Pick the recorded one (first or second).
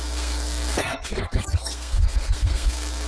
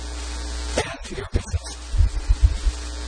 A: second